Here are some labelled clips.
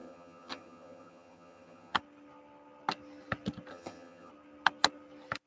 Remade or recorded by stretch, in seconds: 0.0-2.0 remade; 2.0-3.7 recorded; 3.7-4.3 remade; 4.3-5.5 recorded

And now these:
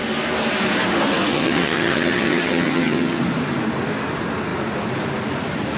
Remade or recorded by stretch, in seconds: 0.0-1.3 recorded; 1.3-3.2 remade; 3.2-5.8 recorded

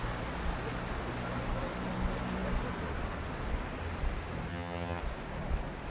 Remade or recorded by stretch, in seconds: 0.0-4.5 recorded; 4.5-5.0 remade; 5.0-5.9 recorded

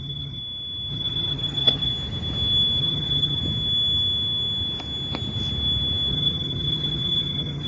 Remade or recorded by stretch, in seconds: 0.0-0.4 remade; 0.4-0.9 recorded; 0.9-1.9 remade; 1.9-2.8 recorded; 2.8-3.4 remade; 3.4-6.1 recorded; 6.1-7.7 remade

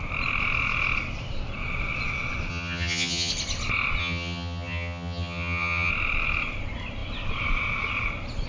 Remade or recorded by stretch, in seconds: 0.0-2.5 recorded; 2.5-3.3 remade; 3.3-4.0 recorded; 4.0-5.9 remade; 5.9-8.5 recorded